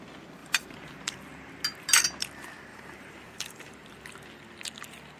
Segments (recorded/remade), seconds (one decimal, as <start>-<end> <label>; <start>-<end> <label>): 0.0-0.4 recorded; 0.4-1.2 remade; 1.2-2.7 recorded; 2.7-4.0 remade; 4.0-5.2 recorded

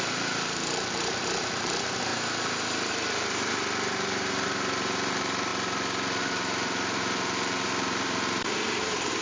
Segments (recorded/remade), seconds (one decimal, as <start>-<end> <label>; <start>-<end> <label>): 0.0-2.1 remade; 2.1-2.9 recorded; 2.9-5.5 remade; 5.5-6.2 recorded; 6.2-9.2 remade